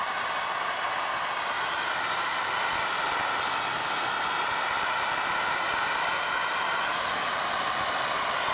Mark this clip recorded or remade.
recorded